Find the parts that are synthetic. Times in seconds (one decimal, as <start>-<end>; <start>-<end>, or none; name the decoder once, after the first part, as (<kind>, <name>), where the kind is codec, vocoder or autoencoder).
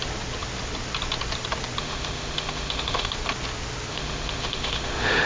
1.8-3.1 (autoencoder, DAC-VAE); 3.9-5.3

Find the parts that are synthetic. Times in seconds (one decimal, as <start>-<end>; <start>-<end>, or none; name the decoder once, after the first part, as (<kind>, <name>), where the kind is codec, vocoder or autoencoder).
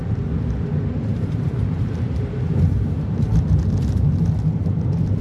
1.1-4.2 (vocoder, BigVGAN v2)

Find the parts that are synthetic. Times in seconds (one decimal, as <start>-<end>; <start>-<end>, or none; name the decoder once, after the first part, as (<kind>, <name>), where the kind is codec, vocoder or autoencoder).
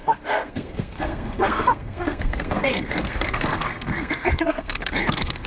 0.0-5.5 (codec, SNAC)